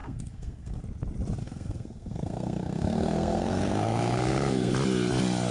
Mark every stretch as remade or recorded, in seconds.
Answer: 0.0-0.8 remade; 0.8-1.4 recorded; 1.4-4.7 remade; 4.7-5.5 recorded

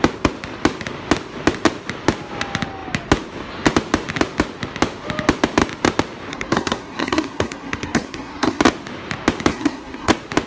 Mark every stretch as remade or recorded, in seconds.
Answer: 0.0-6.3 recorded; 6.3-8.6 remade; 8.6-9.5 recorded; 9.5-10.1 remade; 10.1-10.5 recorded

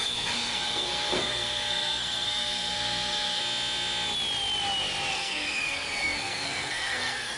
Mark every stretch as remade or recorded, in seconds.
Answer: 0.0-3.4 remade; 3.4-5.1 recorded; 5.1-7.4 remade

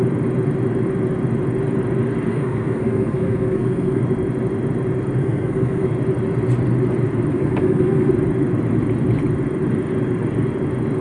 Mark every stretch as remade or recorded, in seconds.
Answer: 0.0-2.3 recorded; 2.3-4.0 remade; 4.0-5.2 recorded; 5.2-5.9 remade; 5.9-7.3 recorded; 7.3-8.1 remade; 8.1-11.0 recorded

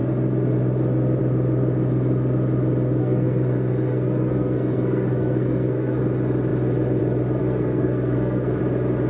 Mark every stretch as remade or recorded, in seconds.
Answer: 0.0-3.0 recorded; 3.0-6.0 remade; 6.0-7.4 recorded; 7.4-8.6 remade; 8.6-9.1 recorded

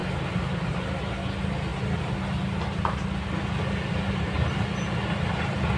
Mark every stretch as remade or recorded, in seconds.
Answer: 0.0-5.8 recorded